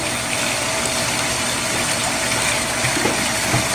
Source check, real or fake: fake